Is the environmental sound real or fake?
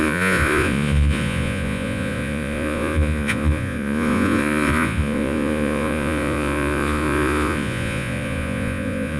fake